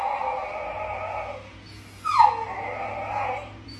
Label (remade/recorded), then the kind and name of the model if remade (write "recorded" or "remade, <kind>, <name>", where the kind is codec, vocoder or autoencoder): recorded